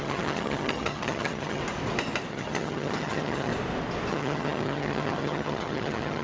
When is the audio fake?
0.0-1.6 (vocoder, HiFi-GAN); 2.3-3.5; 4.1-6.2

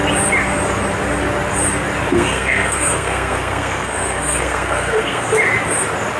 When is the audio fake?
2.1-5.3 (codec, SNAC)

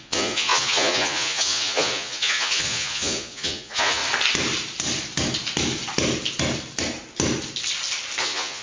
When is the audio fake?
0.0-4.0 (vocoder, Vocos); 8.2-8.6

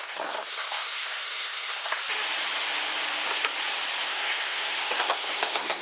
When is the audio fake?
0.0-2.0 (codec, SNAC); 4.0-5.8

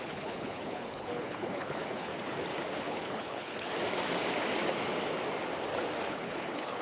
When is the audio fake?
0.0-2.1 (codec, HILCodec); 2.8-3.7; 6.1-6.8

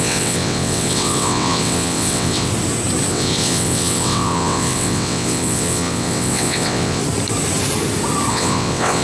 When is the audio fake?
0.0-2.5 (vocoder, WaveNeXt); 3.1-7.0; 8.3-9.0

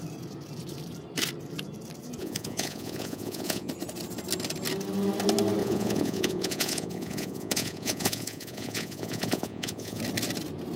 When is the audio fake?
2.2-3.7 (vocoder, Vocos); 5.6-10.0